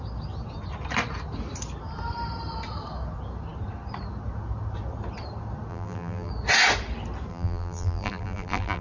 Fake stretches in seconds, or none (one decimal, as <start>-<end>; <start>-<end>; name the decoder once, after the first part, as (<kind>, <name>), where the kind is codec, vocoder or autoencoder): 5.7-6.3 (vocoder, BigVGAN v2); 7.3-8.8